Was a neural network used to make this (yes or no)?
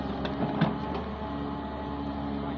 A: no